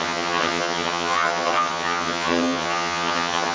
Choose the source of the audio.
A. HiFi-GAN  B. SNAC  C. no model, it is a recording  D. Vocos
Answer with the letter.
A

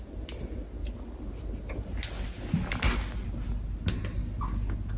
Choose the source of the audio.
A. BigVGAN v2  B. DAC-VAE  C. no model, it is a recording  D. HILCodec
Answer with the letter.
C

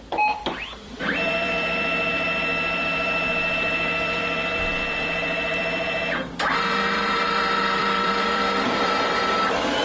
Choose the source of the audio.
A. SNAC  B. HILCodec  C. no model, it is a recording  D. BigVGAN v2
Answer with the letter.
D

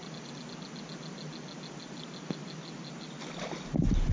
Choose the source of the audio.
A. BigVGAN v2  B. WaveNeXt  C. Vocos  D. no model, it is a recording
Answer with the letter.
D